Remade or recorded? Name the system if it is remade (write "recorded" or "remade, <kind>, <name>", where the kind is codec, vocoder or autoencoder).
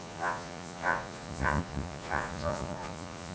remade, vocoder, Vocos